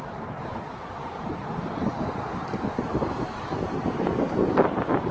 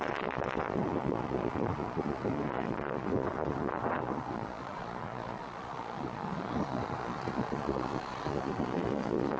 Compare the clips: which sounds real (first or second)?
first